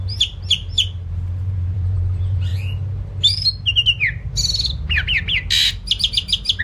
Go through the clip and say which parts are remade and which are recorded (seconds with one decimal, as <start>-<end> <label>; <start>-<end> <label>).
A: 0.0-2.5 remade; 2.5-6.6 recorded